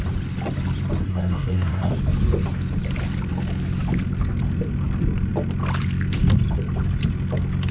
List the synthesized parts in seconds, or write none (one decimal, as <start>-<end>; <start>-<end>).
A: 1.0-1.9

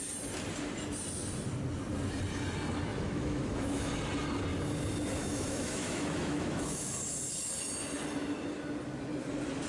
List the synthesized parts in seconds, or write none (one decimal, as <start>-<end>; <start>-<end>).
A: 2.9-3.9; 5.2-6.9

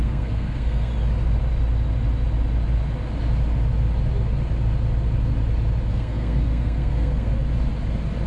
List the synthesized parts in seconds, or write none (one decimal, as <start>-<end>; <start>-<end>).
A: 0.0-0.9; 5.9-7.3